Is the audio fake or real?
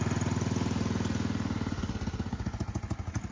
real